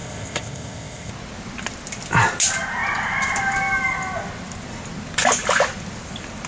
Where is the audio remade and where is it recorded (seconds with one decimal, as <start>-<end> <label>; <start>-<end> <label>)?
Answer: 0.0-1.1 remade; 1.1-6.5 recorded